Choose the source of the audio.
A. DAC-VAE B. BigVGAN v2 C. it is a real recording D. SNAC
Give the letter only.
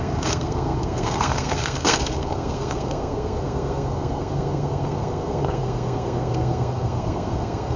D